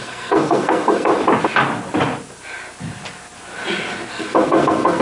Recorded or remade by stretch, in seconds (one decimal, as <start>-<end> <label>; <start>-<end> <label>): 0.0-1.1 remade; 1.1-4.1 recorded; 4.1-5.0 remade